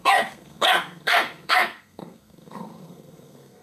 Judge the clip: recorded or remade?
remade